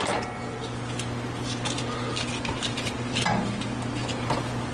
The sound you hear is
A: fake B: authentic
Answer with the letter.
B